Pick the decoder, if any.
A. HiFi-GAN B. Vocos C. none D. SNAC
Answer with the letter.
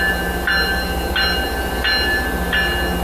C